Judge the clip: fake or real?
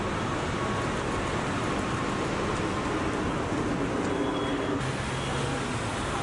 real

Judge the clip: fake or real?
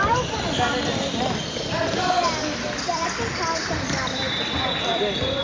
real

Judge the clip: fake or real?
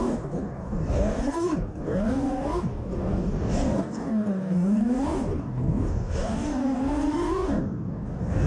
fake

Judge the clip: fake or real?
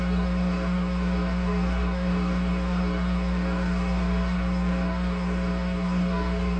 fake